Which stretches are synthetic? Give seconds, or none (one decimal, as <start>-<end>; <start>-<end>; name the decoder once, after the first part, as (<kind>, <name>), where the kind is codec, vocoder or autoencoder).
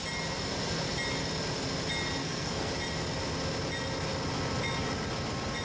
2.2-2.7 (codec, SNAC)